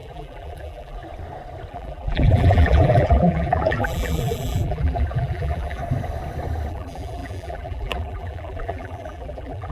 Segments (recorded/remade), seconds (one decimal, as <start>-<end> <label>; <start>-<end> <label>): 0.0-1.0 remade; 1.0-1.7 recorded; 1.7-5.8 remade; 5.8-6.7 recorded; 6.7-9.7 remade